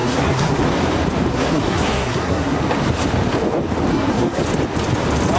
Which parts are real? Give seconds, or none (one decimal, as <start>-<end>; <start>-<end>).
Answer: 0.6-1.3; 2.6-3.9; 4.4-5.4